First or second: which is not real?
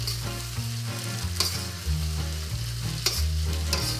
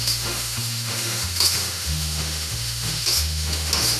second